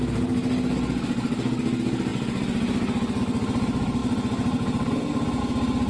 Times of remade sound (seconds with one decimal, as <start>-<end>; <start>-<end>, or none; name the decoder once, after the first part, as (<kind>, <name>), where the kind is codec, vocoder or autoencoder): none